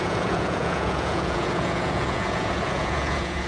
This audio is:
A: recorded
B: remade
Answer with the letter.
B